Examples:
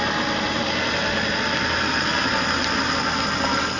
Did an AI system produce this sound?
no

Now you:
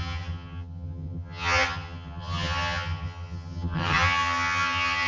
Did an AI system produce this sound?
yes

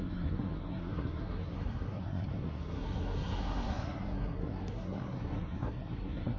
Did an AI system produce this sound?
yes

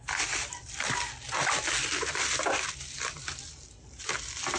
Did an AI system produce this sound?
no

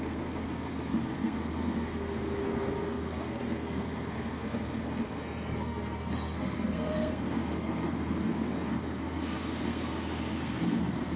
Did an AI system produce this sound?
yes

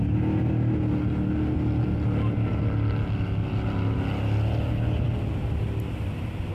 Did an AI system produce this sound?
no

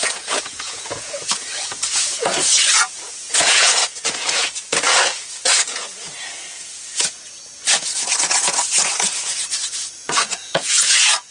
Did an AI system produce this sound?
yes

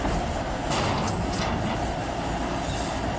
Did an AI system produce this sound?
no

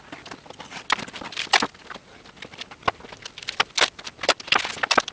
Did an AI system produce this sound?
no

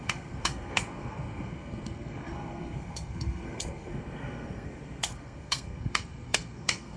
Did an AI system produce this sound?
yes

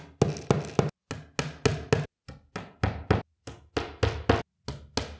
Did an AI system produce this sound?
no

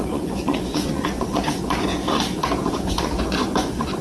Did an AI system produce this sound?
yes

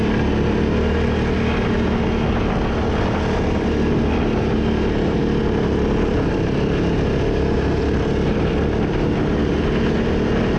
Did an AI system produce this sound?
no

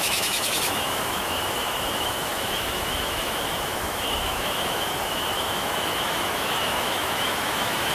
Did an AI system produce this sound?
yes